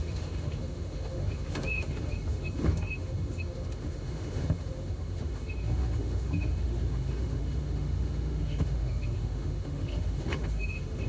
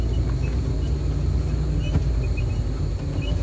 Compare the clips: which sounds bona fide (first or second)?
second